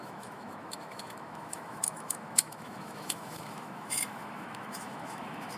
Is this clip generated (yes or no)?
yes